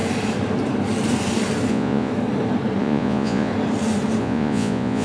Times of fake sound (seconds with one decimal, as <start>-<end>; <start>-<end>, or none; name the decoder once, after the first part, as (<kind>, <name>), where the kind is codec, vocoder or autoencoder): 1.7-2.1 (vocoder, Vocos); 2.8-3.5; 4.2-5.0